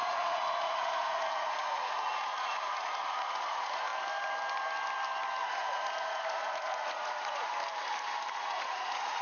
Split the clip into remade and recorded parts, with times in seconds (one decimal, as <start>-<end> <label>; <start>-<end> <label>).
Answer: 0.0-3.9 remade; 3.9-5.5 recorded; 5.5-7.5 remade; 7.5-8.3 recorded; 8.3-9.2 remade